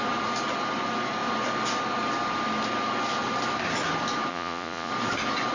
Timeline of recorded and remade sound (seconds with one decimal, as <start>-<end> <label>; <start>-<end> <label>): 0.0-4.3 recorded; 4.3-4.9 remade; 4.9-5.5 recorded